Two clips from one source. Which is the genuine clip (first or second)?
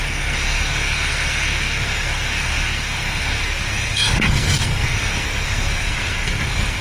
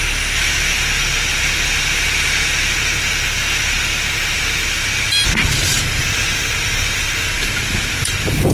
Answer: second